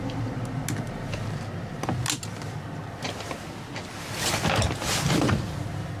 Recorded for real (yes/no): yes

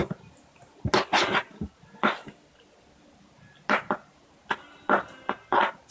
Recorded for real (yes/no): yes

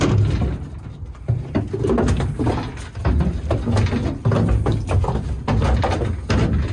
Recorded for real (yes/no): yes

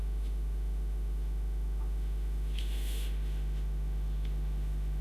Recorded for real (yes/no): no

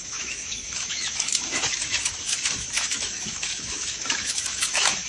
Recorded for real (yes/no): no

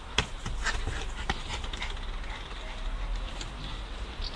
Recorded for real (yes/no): yes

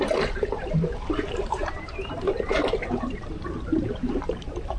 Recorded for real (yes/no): no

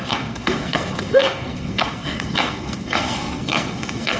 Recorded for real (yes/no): no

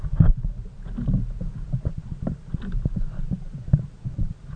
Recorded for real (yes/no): yes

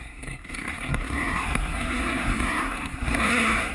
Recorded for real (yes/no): no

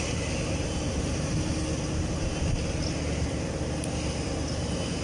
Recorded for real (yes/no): yes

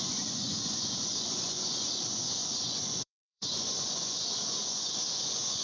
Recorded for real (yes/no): no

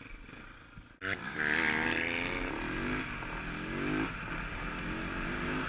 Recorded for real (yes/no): yes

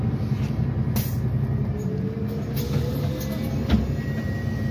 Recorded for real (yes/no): yes